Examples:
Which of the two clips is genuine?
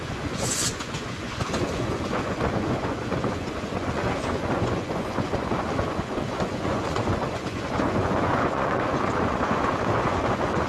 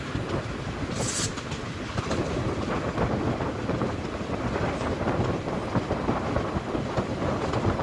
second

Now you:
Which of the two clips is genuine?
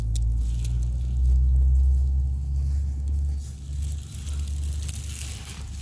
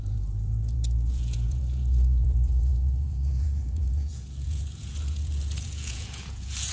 first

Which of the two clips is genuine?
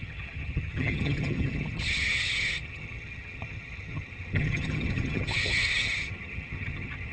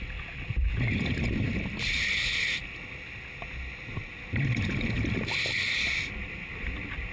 second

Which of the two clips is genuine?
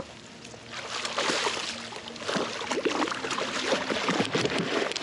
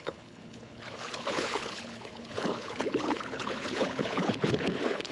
first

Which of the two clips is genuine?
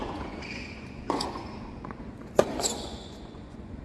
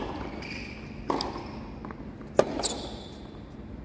second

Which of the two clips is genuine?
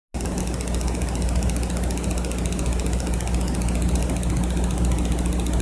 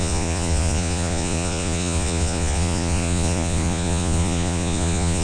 first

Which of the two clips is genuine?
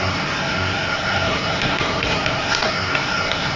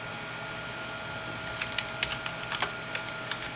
second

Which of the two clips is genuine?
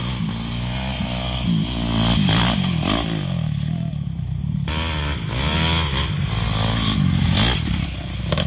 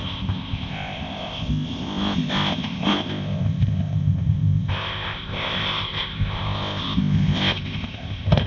first